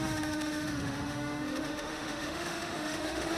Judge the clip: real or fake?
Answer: fake